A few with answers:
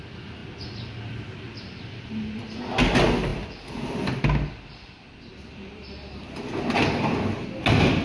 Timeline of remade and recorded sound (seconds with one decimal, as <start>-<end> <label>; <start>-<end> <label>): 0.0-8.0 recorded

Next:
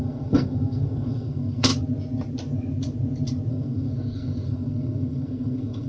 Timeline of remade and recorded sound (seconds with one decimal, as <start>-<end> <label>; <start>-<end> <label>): 0.0-1.7 remade; 1.7-3.5 recorded; 3.5-5.9 remade

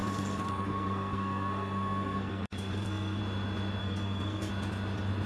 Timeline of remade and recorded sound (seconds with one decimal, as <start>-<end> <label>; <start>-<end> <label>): 0.0-3.2 remade; 3.2-3.8 recorded; 3.8-4.5 remade; 4.5-5.3 recorded

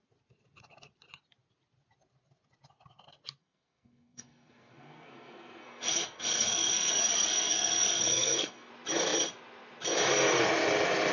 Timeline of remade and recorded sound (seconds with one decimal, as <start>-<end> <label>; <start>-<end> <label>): 0.0-3.4 recorded; 3.4-8.7 remade; 8.7-11.1 recorded

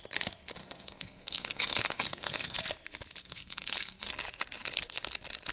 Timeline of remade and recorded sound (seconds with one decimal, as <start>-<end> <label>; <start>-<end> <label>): 0.0-0.6 recorded; 0.6-2.6 remade; 2.6-3.2 recorded; 3.2-4.1 remade; 4.1-5.5 recorded

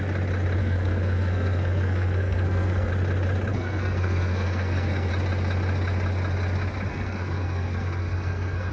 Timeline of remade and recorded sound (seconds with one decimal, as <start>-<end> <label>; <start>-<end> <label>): 0.0-0.6 recorded; 0.6-2.9 remade; 2.9-3.5 recorded; 3.5-5.1 remade; 5.1-6.9 recorded; 6.9-8.7 remade

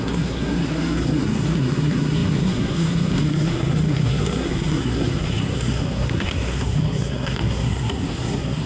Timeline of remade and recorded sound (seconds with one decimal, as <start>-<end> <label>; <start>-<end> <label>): 0.0-8.7 remade

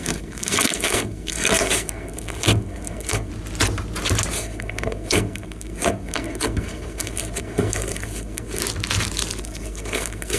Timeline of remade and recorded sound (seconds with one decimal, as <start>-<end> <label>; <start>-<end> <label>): 0.0-3.3 remade; 3.3-4.3 recorded; 4.3-8.6 remade; 8.6-9.4 recorded; 9.4-10.4 remade